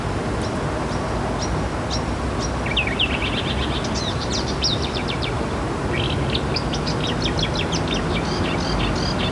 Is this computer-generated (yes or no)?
no